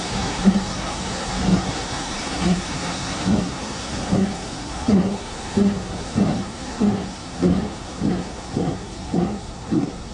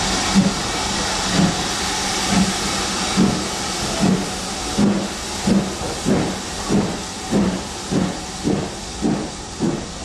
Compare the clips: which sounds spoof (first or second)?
first